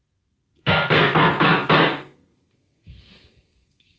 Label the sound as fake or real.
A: fake